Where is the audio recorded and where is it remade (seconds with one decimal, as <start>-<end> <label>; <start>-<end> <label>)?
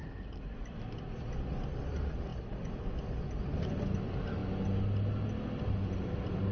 0.0-6.5 recorded